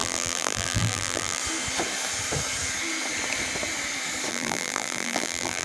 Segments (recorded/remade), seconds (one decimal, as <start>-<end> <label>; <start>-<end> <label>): 0.0-1.4 remade; 1.4-4.3 recorded; 4.3-5.6 remade